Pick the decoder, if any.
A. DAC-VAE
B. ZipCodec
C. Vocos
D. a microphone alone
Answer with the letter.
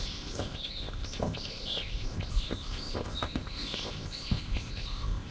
B